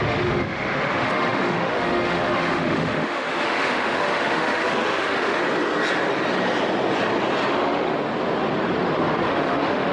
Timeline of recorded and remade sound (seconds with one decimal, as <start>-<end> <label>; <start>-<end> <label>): 0.0-5.4 remade; 5.4-7.5 recorded; 7.5-7.9 remade; 7.9-9.3 recorded; 9.3-9.9 remade

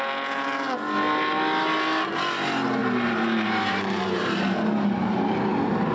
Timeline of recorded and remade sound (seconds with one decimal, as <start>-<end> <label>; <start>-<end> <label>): 0.0-2.8 recorded; 2.8-4.4 remade; 4.4-5.9 recorded

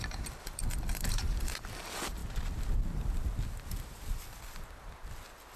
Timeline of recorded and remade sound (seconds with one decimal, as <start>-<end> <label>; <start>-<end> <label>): 0.0-2.2 remade; 2.2-5.6 recorded

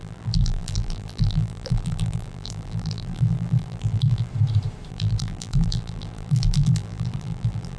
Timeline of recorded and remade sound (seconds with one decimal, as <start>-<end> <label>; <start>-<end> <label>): 0.0-4.3 remade; 4.3-4.9 recorded; 4.9-7.8 remade

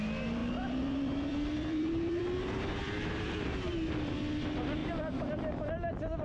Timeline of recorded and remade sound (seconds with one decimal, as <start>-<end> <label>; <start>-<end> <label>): 0.0-0.4 recorded; 0.4-4.1 remade; 4.1-4.8 recorded; 4.8-5.4 remade; 5.4-6.2 recorded

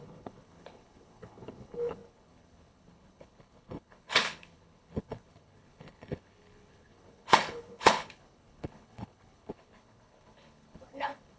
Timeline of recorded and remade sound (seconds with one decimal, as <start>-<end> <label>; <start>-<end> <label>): 0.0-11.4 remade